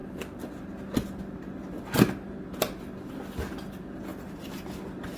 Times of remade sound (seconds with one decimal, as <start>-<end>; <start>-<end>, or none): 4.1-4.6